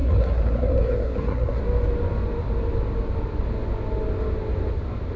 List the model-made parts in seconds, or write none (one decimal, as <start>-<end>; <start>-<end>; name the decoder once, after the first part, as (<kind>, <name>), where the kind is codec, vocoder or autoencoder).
0.0-1.6 (codec, SNAC)